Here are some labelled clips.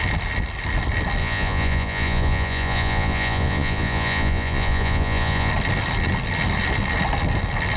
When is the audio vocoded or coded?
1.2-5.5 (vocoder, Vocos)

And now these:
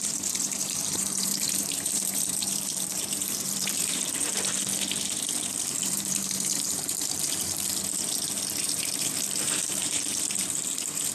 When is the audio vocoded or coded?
0.0-4.3 (vocoder, BigVGAN v2); 5.4-7.7; 8.7-11.1

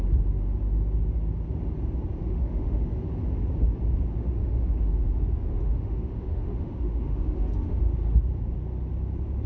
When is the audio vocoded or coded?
2.2-3.1 (autoencoder, DAC-VAE); 4.2-4.9; 5.5-7.8

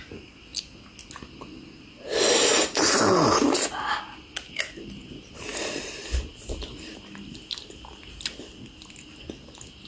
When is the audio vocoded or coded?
none